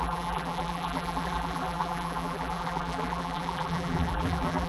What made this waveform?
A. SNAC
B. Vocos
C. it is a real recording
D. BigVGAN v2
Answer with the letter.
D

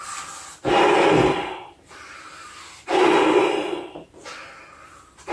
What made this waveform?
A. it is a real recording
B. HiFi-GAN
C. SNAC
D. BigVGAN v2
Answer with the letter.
A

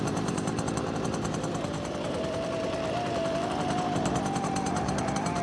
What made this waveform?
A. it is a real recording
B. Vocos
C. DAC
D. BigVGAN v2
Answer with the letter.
D